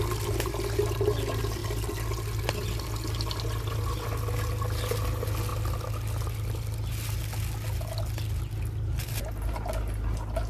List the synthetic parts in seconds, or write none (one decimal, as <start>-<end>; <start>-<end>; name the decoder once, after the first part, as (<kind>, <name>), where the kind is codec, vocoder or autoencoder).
none